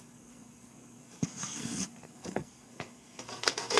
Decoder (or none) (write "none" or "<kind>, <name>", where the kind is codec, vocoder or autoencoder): codec, SNAC